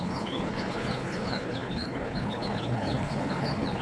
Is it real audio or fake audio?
fake